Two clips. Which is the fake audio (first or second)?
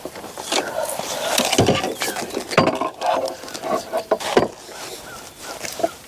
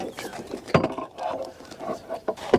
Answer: second